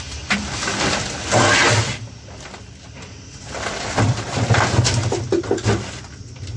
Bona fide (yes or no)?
yes